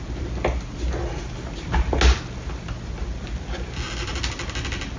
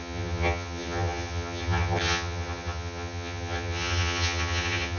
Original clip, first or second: first